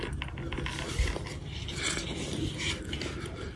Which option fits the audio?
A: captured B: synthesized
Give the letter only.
A